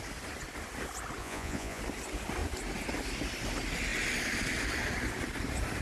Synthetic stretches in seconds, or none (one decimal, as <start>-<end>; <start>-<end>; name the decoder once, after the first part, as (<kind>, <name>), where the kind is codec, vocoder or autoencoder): 1.2-1.8 (vocoder, Vocos)